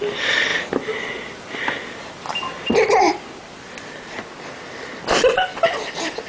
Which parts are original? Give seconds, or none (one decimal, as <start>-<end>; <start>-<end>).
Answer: 0.0-6.3